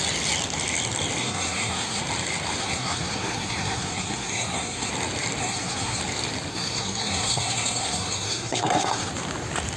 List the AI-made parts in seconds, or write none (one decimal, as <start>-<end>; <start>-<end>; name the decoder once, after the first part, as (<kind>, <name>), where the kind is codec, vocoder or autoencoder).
1.2-2.0 (codec, SNAC); 2.6-4.9; 5.4-6.0; 6.5-9.1